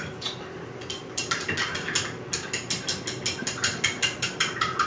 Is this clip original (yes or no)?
yes